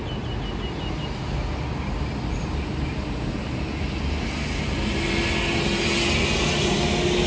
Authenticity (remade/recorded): recorded